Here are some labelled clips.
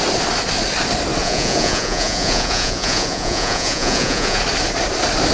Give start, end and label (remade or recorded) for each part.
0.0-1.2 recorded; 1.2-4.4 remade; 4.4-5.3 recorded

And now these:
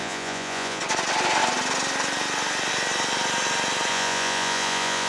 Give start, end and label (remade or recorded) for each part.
0.0-0.8 remade; 0.8-3.9 recorded; 3.9-5.1 remade

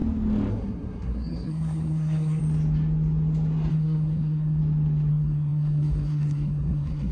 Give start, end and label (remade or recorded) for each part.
0.0-0.5 recorded; 0.5-2.4 remade; 2.4-3.7 recorded; 3.7-4.6 remade; 4.6-5.1 recorded; 5.1-7.1 remade

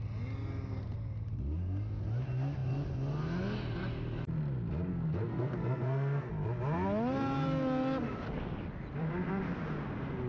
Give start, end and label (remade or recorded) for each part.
0.0-4.9 recorded; 4.9-6.3 remade; 6.3-10.3 recorded

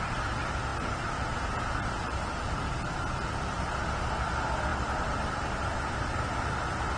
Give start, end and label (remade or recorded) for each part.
0.0-4.7 recorded; 4.7-5.5 remade; 5.5-7.0 recorded

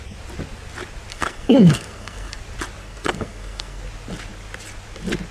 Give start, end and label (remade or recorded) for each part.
0.0-1.1 recorded; 1.1-2.4 remade; 2.4-2.8 recorded; 2.8-3.8 remade; 3.8-5.3 recorded